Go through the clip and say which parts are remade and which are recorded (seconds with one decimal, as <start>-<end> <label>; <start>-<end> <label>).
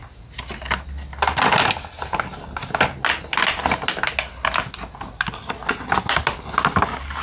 0.0-7.2 recorded